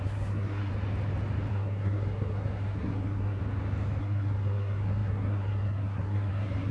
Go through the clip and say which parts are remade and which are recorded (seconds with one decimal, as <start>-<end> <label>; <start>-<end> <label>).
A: 0.0-0.7 remade; 0.7-1.5 recorded; 1.5-3.4 remade; 3.4-4.0 recorded; 4.0-6.7 remade